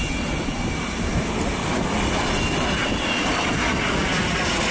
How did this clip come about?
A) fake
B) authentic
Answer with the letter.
B